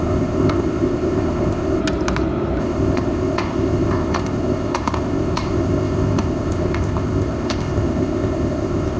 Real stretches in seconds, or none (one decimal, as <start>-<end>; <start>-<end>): 1.8-2.6